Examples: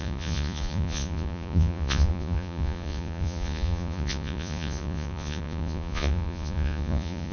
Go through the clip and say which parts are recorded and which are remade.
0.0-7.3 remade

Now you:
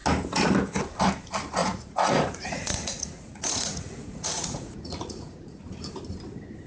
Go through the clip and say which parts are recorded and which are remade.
0.0-1.6 recorded; 1.6-5.6 remade; 5.6-6.7 recorded

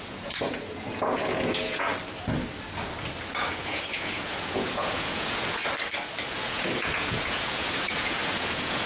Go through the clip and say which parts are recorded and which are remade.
0.0-1.9 remade; 1.9-3.6 recorded; 3.6-5.6 remade; 5.6-6.3 recorded; 6.3-8.9 remade

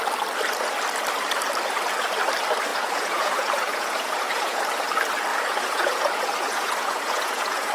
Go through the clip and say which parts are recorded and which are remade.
0.0-2.7 recorded; 2.7-4.6 remade; 4.6-5.3 recorded; 5.3-7.7 remade

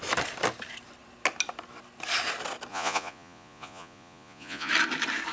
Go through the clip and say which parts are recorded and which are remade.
0.0-2.7 recorded; 2.7-4.7 remade; 4.7-5.3 recorded

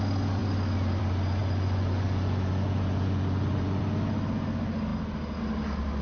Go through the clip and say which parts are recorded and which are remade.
0.0-1.4 recorded; 1.4-3.8 remade; 3.8-6.0 recorded

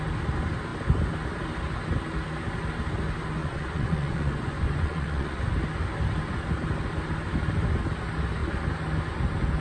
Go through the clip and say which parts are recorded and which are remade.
0.0-3.4 recorded; 3.4-5.4 remade; 5.4-9.6 recorded